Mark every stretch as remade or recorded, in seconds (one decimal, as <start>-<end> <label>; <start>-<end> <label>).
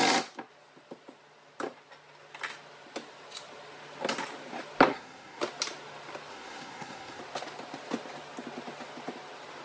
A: 0.0-4.9 recorded; 4.9-5.4 remade; 5.4-6.3 recorded; 6.3-7.2 remade; 7.2-9.6 recorded